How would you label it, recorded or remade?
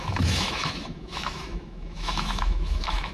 remade